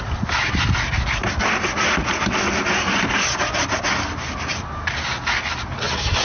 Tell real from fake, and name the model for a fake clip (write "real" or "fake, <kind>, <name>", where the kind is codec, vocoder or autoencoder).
real